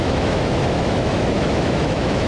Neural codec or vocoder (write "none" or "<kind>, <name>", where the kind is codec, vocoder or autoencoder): autoencoder, DAC-VAE